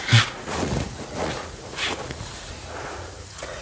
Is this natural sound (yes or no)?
no